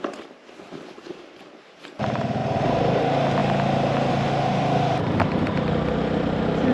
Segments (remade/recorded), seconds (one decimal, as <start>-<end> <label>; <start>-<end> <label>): 0.0-6.7 recorded